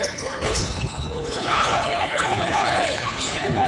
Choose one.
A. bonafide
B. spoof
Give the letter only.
B